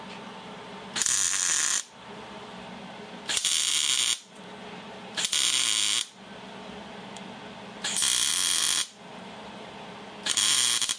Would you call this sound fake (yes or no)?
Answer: yes